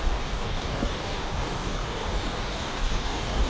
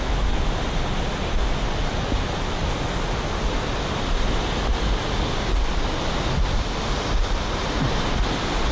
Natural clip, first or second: second